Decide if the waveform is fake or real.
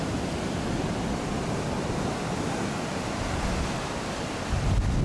real